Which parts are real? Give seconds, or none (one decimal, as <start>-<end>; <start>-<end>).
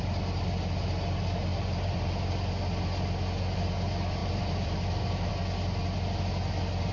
0.0-1.5; 2.1-4.2; 5.3-6.9